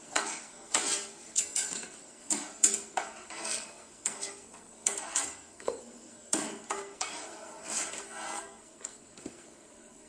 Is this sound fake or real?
fake